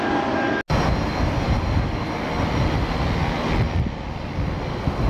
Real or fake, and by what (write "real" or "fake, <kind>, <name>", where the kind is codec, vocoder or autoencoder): real